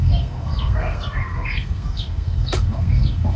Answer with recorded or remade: remade